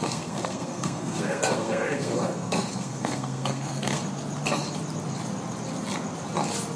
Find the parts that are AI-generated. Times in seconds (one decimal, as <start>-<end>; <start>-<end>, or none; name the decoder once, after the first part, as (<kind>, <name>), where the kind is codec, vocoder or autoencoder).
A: 0.0-4.0 (codec, SNAC)